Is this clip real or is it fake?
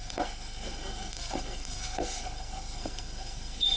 fake